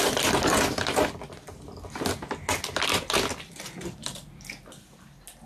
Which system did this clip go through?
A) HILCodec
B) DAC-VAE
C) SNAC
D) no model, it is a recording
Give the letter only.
D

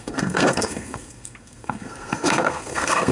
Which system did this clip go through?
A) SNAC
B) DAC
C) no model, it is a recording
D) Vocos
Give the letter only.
A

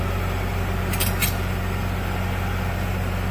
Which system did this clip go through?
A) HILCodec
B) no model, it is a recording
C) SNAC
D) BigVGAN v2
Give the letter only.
B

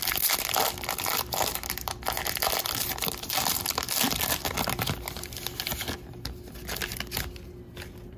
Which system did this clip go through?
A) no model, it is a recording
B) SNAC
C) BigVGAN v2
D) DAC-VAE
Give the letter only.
A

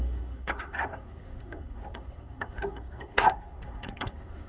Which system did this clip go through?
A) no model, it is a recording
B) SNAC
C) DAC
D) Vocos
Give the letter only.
B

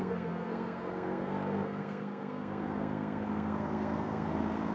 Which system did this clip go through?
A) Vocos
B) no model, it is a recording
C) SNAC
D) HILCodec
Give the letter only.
C